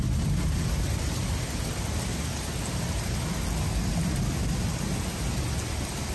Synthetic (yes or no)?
no